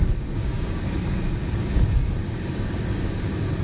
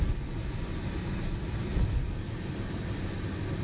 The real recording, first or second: second